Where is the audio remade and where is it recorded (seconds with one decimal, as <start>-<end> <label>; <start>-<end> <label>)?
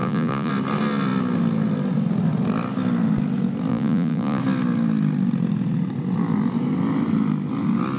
0.0-0.5 remade; 0.5-3.7 recorded; 3.7-4.4 remade; 4.4-8.0 recorded